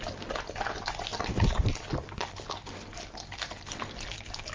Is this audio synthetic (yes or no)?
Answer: no